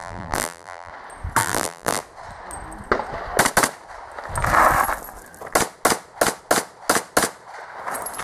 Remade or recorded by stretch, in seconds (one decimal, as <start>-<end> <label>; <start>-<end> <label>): 0.0-0.9 remade; 0.9-1.4 recorded; 1.4-2.0 remade; 2.0-8.2 recorded